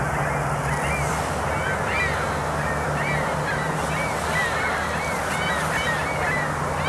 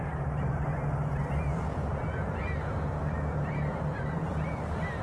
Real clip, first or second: first